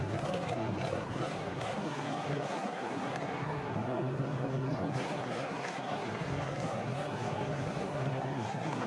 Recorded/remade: remade